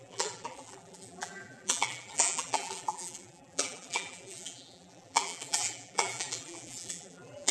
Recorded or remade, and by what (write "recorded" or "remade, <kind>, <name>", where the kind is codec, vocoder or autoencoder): remade, vocoder, BigVGAN v2